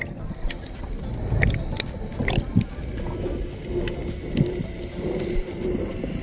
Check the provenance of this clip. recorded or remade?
recorded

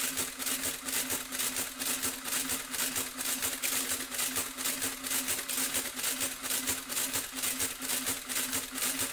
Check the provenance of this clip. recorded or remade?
recorded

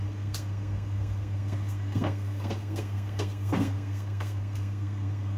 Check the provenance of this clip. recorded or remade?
remade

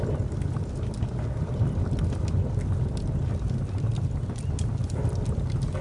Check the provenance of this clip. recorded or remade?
recorded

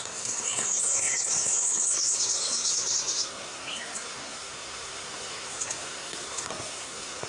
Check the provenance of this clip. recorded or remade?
remade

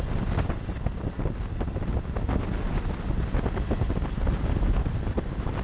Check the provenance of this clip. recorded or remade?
recorded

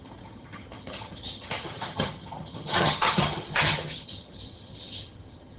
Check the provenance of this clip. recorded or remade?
remade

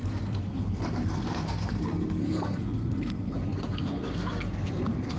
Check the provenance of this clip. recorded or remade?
remade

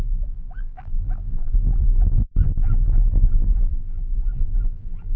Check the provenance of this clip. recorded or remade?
remade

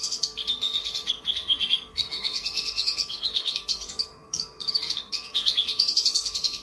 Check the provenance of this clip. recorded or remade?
remade